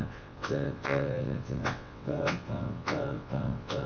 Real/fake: fake